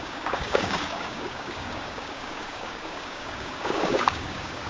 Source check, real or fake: fake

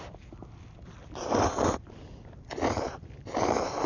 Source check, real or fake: real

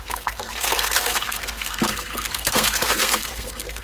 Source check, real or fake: fake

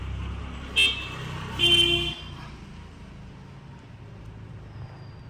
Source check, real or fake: real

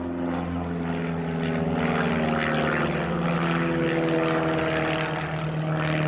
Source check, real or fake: real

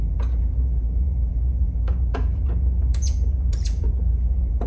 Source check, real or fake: fake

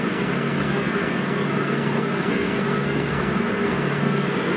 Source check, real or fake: fake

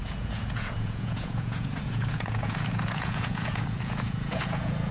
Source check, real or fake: fake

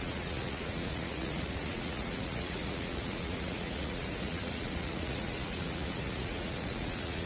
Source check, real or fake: fake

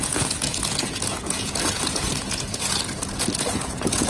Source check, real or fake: fake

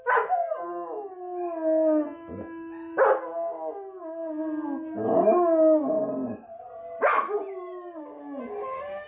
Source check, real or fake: real